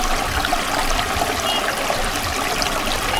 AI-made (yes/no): no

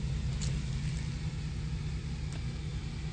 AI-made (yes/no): no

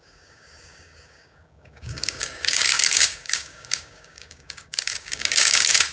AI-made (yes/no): yes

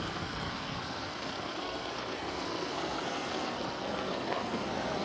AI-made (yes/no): yes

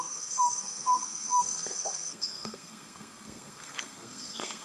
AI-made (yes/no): yes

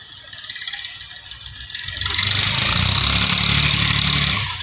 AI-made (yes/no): no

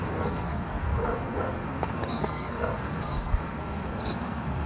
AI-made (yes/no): yes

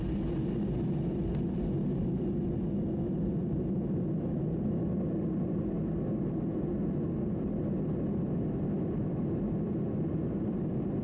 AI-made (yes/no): no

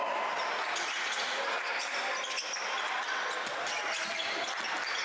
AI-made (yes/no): no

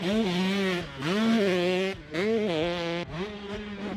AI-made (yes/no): no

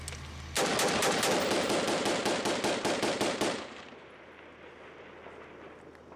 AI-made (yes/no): no